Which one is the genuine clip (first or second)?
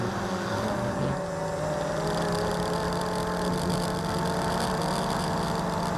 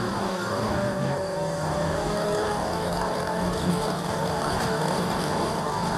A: first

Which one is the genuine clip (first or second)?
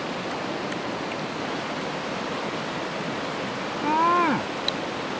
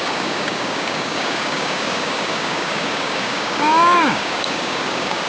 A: first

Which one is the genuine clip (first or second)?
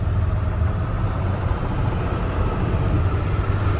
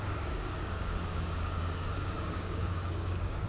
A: first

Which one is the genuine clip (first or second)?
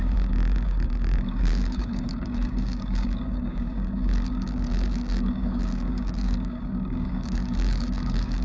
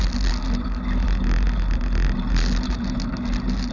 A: second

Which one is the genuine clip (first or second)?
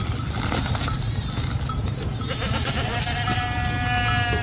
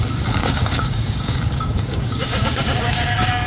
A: first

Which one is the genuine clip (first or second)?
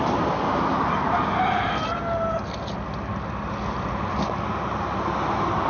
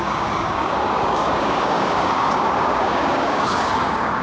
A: first